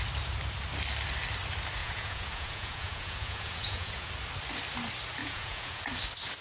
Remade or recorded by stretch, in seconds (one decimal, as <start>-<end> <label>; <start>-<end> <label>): 0.0-1.8 recorded; 1.8-4.1 remade; 4.1-5.2 recorded; 5.2-5.8 remade; 5.8-6.4 recorded